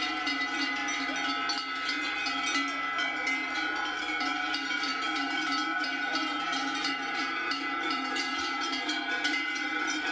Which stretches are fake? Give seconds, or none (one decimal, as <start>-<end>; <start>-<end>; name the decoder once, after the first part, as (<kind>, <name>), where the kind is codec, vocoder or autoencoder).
0.0-0.8 (vocoder, BigVGAN v2); 4.0-10.1